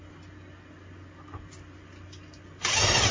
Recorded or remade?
recorded